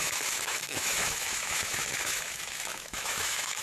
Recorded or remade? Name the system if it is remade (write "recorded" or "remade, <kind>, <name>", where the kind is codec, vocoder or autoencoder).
remade, autoencoder, DAC-VAE